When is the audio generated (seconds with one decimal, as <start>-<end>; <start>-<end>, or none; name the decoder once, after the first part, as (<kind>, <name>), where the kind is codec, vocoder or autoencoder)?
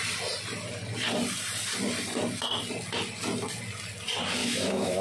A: 4.4-5.0 (autoencoder, DAC-VAE)